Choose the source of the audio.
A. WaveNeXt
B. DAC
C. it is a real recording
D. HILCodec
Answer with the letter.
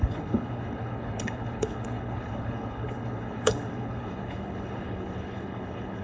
D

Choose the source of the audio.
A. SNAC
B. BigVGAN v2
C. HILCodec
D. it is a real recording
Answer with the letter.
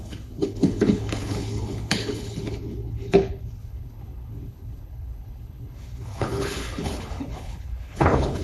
C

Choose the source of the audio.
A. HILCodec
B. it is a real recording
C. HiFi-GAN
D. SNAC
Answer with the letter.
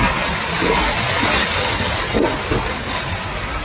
B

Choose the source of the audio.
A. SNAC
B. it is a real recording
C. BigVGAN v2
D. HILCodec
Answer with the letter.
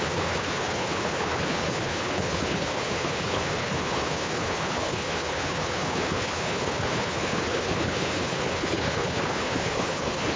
D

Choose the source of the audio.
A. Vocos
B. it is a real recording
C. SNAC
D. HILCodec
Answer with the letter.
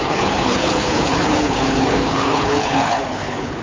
D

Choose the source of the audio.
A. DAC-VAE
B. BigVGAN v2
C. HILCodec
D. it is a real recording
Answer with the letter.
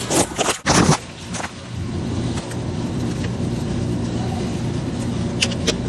D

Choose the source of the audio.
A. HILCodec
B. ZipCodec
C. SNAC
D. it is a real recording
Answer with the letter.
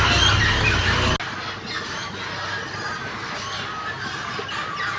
D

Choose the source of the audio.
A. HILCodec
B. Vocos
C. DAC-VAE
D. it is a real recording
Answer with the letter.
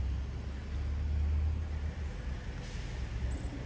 D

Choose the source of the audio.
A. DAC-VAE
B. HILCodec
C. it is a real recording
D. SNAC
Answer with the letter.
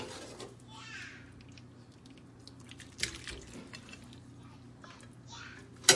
C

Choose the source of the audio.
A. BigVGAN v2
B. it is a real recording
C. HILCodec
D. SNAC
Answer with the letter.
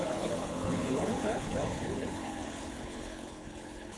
C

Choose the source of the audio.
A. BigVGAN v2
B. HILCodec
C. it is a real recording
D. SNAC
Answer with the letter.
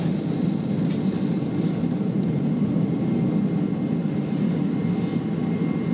C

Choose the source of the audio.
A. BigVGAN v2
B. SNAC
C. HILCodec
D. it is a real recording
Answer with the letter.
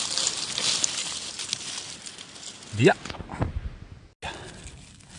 D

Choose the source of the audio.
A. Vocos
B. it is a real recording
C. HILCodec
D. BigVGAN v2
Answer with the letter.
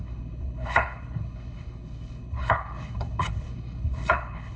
C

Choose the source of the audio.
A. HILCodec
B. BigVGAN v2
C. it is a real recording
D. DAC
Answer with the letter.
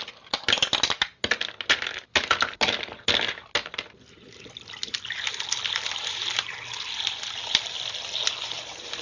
C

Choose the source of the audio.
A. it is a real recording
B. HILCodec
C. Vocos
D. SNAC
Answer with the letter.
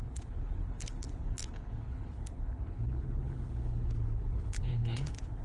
B